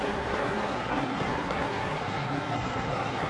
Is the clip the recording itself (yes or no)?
no